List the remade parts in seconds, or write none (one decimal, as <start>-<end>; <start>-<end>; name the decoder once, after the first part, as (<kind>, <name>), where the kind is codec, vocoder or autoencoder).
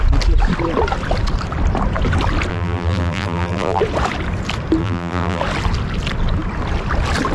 2.5-3.8 (vocoder, BigVGAN v2); 4.8-5.4